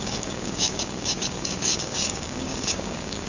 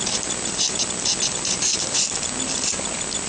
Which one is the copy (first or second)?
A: first